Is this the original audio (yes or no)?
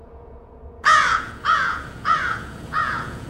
no